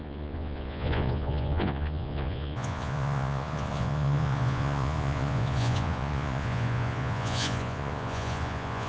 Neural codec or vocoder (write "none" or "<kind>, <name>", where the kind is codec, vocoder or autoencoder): vocoder, Vocos